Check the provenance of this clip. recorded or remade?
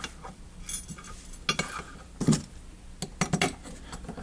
recorded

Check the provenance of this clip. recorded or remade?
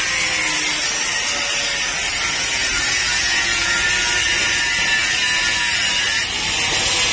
recorded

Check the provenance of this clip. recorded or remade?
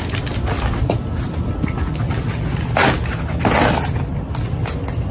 recorded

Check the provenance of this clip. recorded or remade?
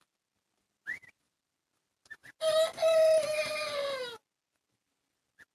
recorded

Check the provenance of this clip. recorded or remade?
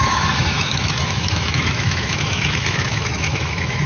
remade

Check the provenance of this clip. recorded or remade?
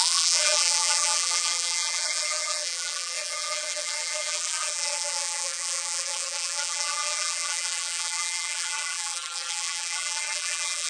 remade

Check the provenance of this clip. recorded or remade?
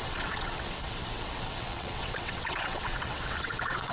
remade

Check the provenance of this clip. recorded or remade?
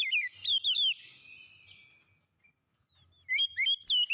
recorded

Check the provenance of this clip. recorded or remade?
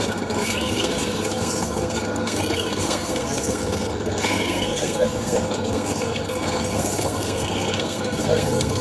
remade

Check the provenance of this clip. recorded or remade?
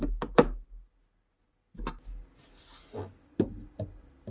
recorded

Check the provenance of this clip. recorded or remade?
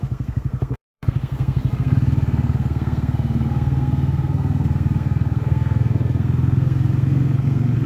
remade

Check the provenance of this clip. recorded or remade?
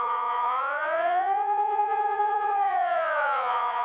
remade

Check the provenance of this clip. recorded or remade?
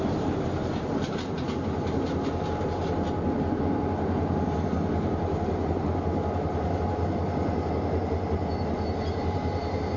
recorded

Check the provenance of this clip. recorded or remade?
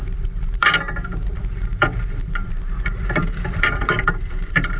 remade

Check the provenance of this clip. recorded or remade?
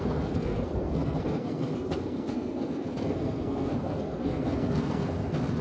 remade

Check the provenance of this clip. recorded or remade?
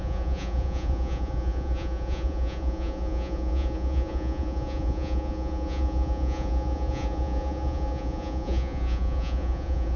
remade